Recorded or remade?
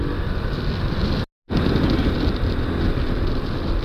recorded